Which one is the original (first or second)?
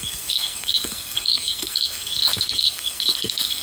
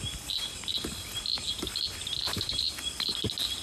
second